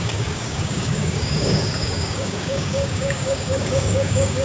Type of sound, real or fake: fake